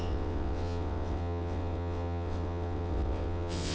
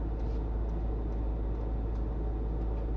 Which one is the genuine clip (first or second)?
second